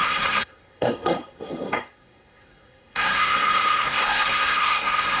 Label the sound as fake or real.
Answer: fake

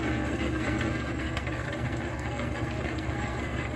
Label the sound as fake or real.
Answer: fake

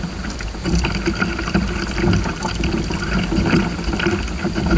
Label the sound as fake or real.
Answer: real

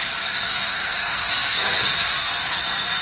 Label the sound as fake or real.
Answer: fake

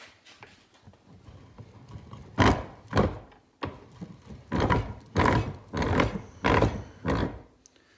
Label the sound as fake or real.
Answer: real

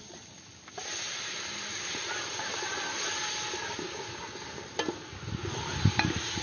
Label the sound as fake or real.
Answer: real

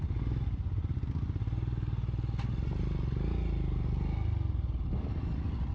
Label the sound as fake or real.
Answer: real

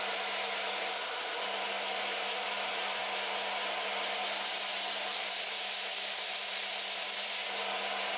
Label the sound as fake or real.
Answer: real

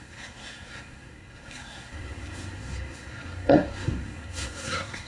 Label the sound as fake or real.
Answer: fake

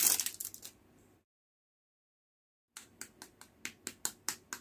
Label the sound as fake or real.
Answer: real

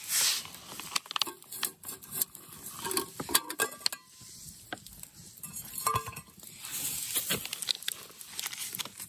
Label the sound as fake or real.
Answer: real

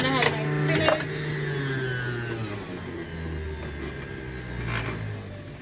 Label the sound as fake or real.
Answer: real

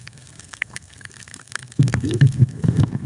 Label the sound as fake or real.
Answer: fake